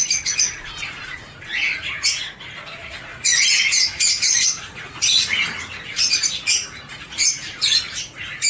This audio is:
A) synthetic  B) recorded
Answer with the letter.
A